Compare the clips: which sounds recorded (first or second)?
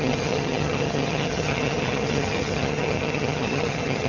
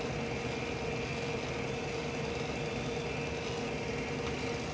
second